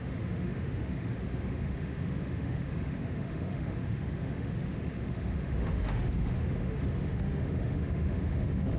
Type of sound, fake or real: fake